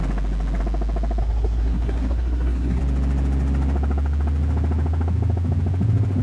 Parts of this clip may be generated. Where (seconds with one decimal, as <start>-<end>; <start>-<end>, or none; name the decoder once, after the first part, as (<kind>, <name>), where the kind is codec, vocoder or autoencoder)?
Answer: 1.2-2.8 (codec, SNAC)